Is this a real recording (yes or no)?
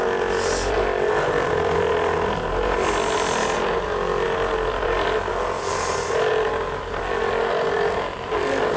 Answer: yes